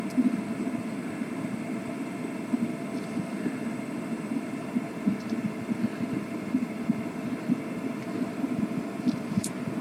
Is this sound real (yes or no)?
no